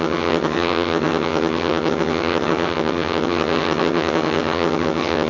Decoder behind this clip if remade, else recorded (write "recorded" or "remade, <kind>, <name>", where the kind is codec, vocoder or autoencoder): remade, vocoder, HiFi-GAN